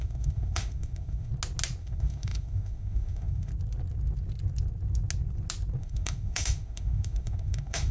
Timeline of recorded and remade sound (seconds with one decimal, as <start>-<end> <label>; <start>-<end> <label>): 0.0-1.3 remade; 1.3-1.8 recorded; 1.8-3.5 remade; 3.5-5.8 recorded; 5.8-7.9 remade